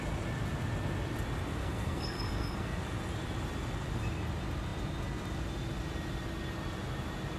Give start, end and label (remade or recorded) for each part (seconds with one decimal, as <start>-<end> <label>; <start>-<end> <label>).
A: 0.0-1.6 recorded; 1.6-2.8 remade; 2.8-7.4 recorded